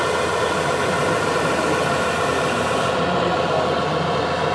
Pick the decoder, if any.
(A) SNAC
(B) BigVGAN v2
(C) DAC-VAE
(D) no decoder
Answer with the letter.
D